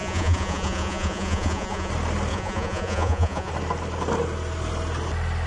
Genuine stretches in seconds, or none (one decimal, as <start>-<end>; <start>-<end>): 1.9-2.3; 3.5-5.5

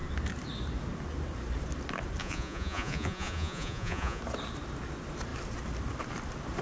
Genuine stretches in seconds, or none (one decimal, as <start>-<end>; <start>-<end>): 0.0-2.2; 4.2-6.6

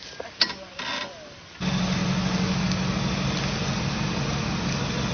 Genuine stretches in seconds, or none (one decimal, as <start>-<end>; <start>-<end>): 0.0-5.1

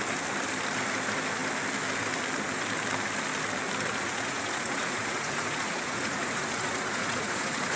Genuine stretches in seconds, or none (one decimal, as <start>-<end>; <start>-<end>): 0.0-4.0

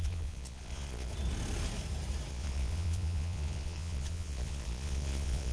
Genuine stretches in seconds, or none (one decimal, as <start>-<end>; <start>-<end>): 1.1-2.3

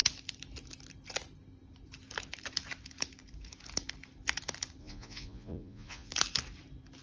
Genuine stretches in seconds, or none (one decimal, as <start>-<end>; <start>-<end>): 0.0-4.8; 6.1-7.0